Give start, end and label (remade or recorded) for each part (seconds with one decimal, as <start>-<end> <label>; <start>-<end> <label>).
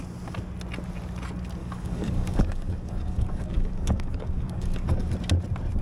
0.0-1.6 recorded; 1.6-5.1 remade; 5.1-5.8 recorded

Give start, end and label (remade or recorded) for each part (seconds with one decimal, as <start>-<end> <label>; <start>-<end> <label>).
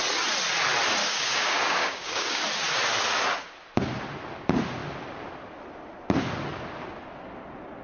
0.0-1.0 recorded; 1.0-2.4 remade; 2.4-7.8 recorded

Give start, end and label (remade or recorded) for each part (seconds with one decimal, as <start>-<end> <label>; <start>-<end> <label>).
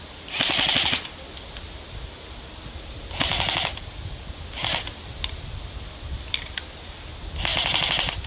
0.0-8.3 recorded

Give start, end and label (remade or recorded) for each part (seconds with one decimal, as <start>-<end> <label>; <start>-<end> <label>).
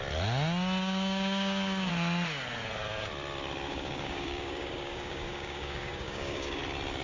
0.0-0.8 recorded; 0.8-1.9 remade; 1.9-3.7 recorded; 3.7-6.6 remade; 6.6-7.0 recorded